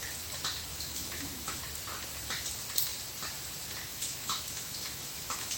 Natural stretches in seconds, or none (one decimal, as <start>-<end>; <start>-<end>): 0.0-0.7; 1.6-3.9